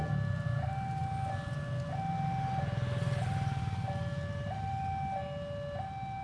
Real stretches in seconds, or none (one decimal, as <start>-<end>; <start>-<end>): 0.0-6.2